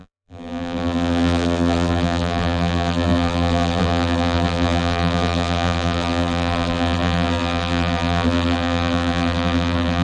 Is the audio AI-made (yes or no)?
yes